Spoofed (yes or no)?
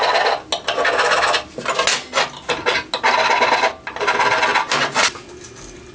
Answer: no